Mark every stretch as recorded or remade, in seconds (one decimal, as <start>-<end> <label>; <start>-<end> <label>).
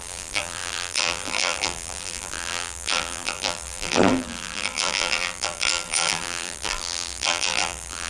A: 0.0-8.1 remade